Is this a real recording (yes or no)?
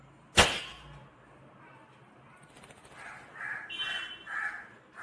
yes